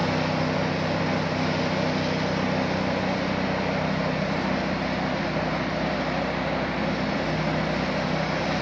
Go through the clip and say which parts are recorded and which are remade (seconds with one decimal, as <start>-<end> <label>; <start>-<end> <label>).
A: 0.0-8.6 recorded